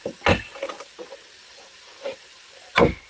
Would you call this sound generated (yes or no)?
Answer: no